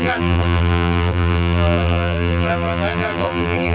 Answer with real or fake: fake